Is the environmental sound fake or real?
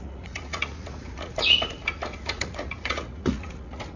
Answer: fake